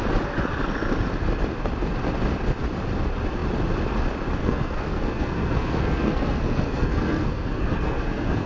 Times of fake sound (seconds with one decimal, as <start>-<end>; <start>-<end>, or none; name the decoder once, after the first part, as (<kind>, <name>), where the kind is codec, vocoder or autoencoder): 4.4-8.5 (codec, SNAC)